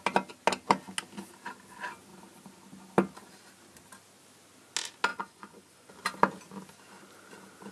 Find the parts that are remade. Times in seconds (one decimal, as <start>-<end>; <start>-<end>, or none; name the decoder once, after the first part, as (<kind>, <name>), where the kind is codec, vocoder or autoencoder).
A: 5.1-5.9 (vocoder, Vocos)